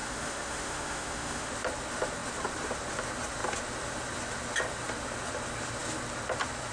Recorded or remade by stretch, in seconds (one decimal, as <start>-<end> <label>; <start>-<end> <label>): 0.0-1.5 remade; 1.5-6.7 recorded

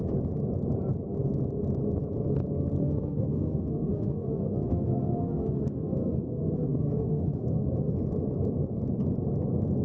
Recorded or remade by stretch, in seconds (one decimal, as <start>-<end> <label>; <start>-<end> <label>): 0.0-2.8 recorded; 2.8-7.9 remade; 7.9-9.8 recorded

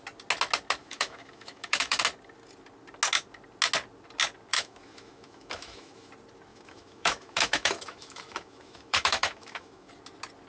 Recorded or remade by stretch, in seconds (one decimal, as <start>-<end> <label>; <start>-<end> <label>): 0.0-0.8 recorded; 0.8-2.0 remade; 2.0-4.5 recorded; 4.5-6.1 remade; 6.1-6.5 recorded; 6.5-9.9 remade; 9.9-10.5 recorded

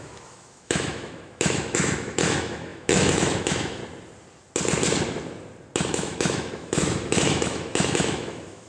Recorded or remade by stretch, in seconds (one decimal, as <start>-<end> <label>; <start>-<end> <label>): 0.0-3.8 remade; 3.8-5.9 recorded; 5.9-8.7 remade

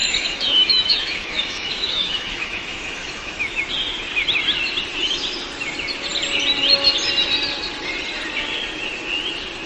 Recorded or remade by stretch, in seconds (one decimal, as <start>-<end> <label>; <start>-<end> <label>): 0.0-3.6 remade; 3.6-9.7 recorded

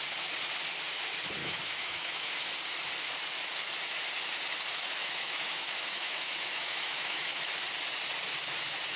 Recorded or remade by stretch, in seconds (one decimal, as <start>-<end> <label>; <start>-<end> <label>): 0.0-1.4 recorded; 1.4-2.3 remade; 2.3-5.0 recorded; 5.0-7.5 remade; 7.5-9.0 recorded

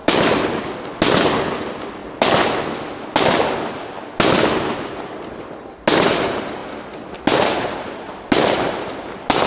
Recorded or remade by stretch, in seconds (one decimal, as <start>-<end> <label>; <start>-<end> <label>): 0.0-9.5 recorded

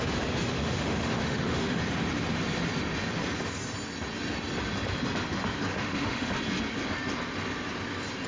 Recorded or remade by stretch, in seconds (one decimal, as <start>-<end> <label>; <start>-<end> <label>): 0.0-0.5 recorded; 0.5-1.8 remade; 1.8-5.7 recorded; 5.7-6.3 remade; 6.3-8.3 recorded